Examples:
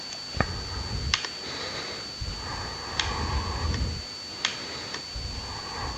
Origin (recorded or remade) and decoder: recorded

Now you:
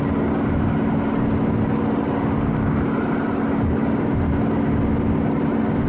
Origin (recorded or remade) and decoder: recorded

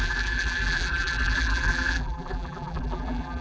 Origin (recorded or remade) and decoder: remade, vocoder, BigVGAN v2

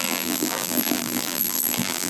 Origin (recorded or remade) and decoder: remade, vocoder, BigVGAN v2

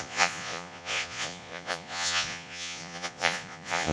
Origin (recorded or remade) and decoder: remade, vocoder, Vocos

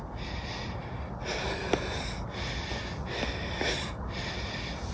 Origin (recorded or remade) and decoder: recorded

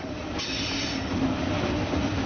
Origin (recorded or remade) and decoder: recorded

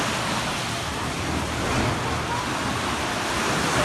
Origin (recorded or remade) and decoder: recorded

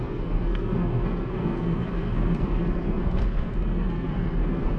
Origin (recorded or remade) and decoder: remade, codec, SNAC